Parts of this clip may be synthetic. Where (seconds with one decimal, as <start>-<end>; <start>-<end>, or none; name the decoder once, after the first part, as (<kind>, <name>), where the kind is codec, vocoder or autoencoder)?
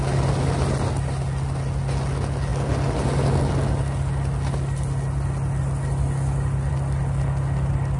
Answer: none